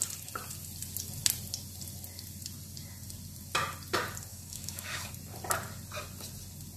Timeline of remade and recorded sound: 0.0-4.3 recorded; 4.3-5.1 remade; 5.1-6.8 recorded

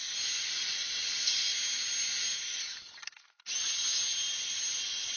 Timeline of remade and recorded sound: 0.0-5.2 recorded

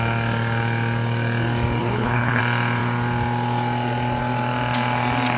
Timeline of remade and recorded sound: 0.0-1.8 recorded; 1.8-2.4 remade; 2.4-5.4 recorded